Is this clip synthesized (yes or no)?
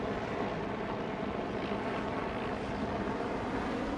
no